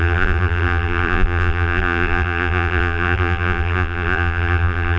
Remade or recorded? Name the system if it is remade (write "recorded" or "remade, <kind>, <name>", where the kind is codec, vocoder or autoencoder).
remade, vocoder, BigVGAN v2